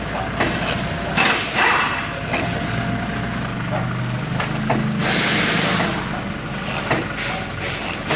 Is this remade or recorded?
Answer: recorded